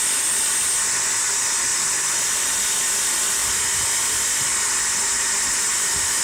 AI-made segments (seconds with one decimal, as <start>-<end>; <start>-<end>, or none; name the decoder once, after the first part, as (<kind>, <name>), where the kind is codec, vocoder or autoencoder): 1.7-2.5 (vocoder, BigVGAN v2)